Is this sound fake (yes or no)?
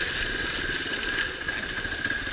no